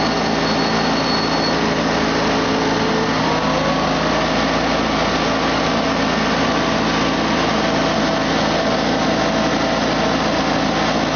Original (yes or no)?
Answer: yes